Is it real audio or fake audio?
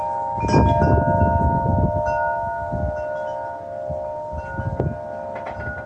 real